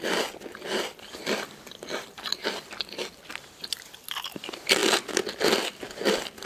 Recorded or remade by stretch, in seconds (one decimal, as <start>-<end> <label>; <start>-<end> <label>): 0.0-3.3 recorded; 3.3-3.9 remade; 3.9-6.5 recorded